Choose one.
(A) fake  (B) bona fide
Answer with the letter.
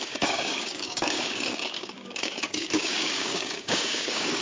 A